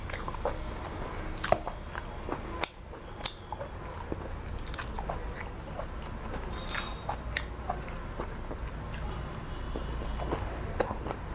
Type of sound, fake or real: real